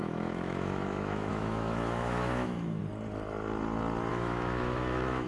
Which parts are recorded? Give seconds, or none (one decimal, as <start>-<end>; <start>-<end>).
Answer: 2.8-4.1